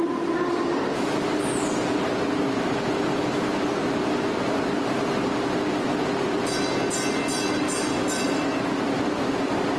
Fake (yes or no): no